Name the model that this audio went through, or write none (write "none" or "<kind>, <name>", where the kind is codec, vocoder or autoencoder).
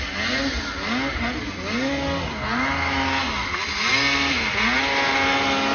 none